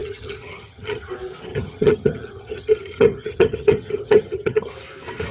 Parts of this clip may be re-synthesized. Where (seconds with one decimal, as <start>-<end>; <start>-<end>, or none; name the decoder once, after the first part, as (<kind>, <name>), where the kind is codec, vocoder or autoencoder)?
0.0-1.1 (vocoder, HiFi-GAN); 1.5-4.7

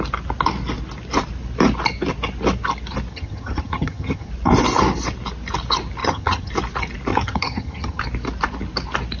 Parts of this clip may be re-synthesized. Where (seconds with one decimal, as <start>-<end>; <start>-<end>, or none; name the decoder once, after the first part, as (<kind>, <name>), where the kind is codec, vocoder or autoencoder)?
3.1-4.3 (vocoder, HiFi-GAN); 6.0-6.5; 7.1-8.0

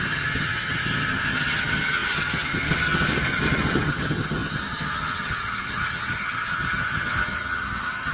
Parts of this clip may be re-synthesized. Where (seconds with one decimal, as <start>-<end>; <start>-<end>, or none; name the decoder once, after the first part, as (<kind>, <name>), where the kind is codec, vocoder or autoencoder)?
0.0-8.1 (vocoder, HiFi-GAN)

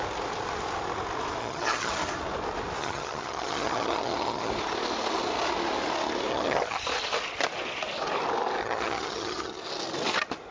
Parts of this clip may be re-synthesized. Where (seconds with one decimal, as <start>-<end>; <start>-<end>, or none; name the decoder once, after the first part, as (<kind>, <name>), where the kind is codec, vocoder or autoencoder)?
1.4-1.9 (vocoder, HiFi-GAN); 2.8-4.5; 6.3-6.8; 8.6-9.6

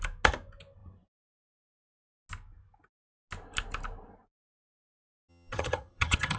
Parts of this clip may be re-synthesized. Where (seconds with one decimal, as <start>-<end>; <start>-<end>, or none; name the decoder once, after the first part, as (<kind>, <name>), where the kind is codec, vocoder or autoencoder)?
5.3-6.4 (vocoder, HiFi-GAN)